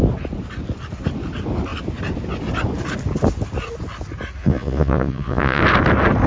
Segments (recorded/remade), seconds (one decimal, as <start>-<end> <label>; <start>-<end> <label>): 0.0-4.4 recorded; 4.4-5.6 remade; 5.6-6.3 recorded